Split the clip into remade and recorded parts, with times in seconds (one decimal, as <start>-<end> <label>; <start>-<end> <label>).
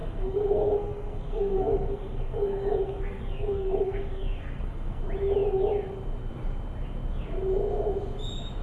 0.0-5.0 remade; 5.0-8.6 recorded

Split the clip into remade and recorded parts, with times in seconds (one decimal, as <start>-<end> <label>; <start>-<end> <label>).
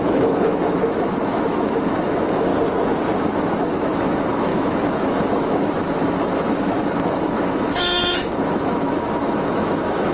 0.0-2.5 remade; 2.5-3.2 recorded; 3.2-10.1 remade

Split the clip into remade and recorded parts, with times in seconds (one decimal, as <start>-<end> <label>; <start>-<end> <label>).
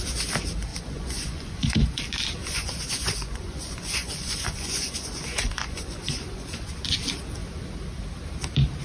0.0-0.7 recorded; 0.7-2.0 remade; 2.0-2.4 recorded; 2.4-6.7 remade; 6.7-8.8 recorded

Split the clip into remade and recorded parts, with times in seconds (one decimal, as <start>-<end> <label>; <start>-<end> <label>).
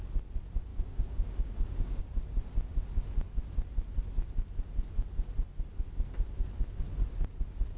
0.0-0.7 recorded; 0.7-2.0 remade; 2.0-7.8 recorded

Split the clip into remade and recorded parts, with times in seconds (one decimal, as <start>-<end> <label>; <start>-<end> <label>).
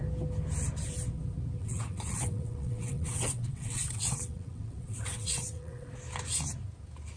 0.0-1.6 recorded; 1.6-5.9 remade; 5.9-7.2 recorded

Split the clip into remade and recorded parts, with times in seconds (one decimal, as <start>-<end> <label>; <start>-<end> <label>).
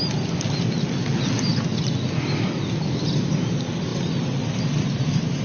0.0-5.4 recorded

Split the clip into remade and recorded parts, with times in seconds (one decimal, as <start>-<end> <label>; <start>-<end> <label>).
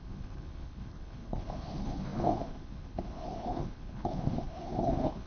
0.0-5.3 remade